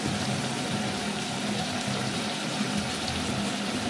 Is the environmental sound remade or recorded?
recorded